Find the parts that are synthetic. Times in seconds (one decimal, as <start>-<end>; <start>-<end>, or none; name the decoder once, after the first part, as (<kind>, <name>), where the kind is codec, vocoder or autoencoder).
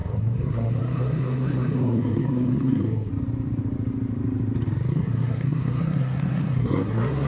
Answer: 0.0-3.1 (codec, SNAC); 4.9-7.3